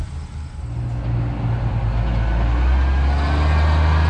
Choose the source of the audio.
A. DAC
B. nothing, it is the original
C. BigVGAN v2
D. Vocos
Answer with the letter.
B